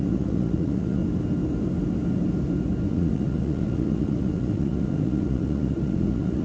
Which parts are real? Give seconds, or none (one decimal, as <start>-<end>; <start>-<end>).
1.0-2.9